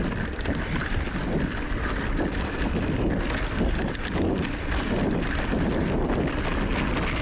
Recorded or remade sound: recorded